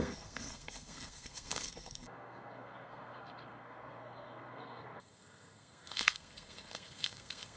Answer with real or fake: fake